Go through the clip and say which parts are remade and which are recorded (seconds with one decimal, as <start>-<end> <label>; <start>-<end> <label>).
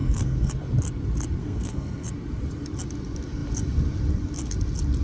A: 0.0-0.5 remade; 0.5-1.4 recorded; 1.4-2.1 remade; 2.1-5.0 recorded